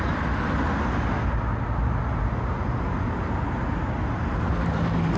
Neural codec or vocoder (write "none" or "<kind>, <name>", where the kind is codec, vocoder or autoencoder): none